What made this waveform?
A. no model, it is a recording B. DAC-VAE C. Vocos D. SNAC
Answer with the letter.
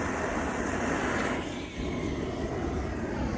A